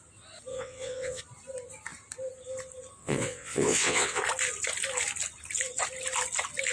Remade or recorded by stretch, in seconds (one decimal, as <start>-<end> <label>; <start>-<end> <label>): 0.0-0.5 recorded; 0.5-1.2 remade; 1.2-3.0 recorded; 3.0-4.2 remade; 4.2-6.7 recorded